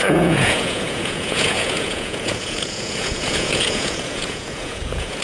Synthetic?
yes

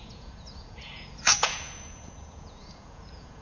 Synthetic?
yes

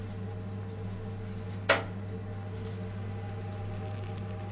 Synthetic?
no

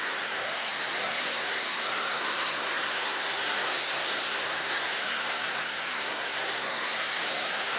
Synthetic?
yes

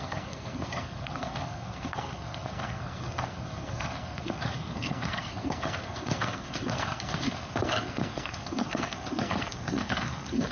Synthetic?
yes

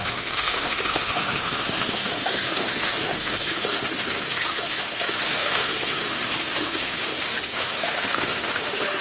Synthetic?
yes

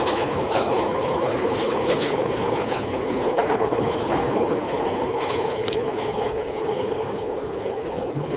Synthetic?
yes